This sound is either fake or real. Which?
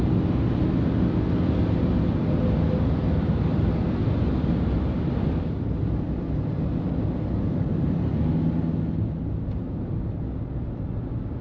real